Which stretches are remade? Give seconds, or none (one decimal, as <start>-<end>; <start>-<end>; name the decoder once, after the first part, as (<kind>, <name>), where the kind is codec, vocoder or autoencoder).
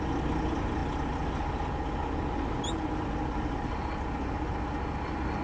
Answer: none